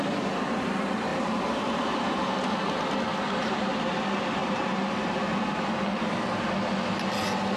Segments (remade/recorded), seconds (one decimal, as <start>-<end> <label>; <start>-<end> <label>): 0.0-1.1 recorded; 1.1-1.8 remade; 1.8-3.1 recorded; 3.1-3.7 remade; 3.7-4.4 recorded; 4.4-5.3 remade; 5.3-7.6 recorded